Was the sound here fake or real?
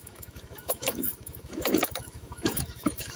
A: fake